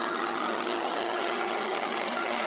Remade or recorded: remade